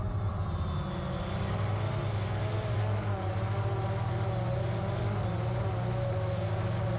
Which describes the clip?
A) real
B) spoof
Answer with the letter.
A